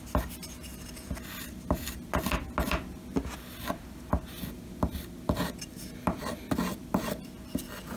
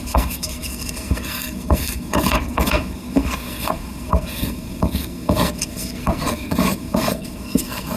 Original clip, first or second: first